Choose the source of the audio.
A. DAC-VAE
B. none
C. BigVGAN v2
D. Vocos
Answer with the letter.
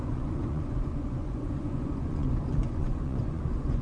D